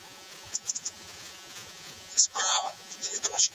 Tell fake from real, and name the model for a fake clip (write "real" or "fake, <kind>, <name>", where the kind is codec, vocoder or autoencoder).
fake, vocoder, Vocos